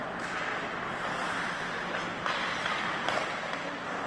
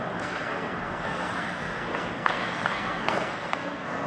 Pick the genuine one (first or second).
first